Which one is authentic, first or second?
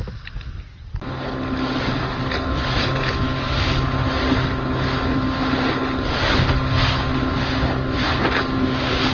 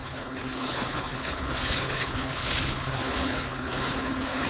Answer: first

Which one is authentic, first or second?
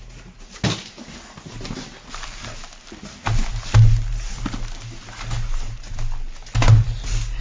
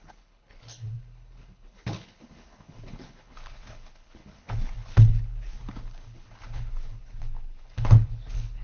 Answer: first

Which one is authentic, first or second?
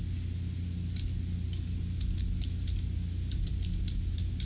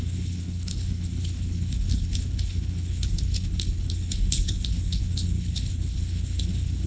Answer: first